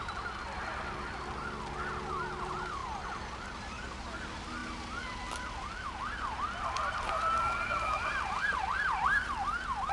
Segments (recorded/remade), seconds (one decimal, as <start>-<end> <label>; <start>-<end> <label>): 0.0-9.9 recorded